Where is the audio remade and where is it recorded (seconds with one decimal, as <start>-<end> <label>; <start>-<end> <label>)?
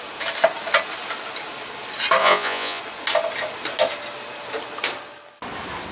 0.0-2.2 recorded; 2.2-2.8 remade; 2.8-5.9 recorded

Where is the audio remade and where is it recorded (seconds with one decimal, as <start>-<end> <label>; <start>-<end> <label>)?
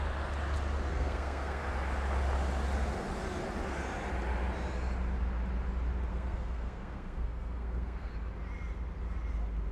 0.0-0.9 recorded; 0.9-1.6 remade; 1.6-6.1 recorded; 6.1-8.1 remade; 8.1-9.7 recorded